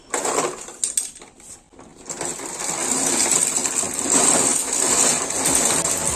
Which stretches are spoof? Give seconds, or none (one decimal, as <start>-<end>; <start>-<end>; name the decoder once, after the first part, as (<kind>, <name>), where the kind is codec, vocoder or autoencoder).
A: none